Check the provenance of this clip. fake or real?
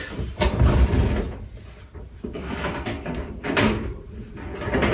real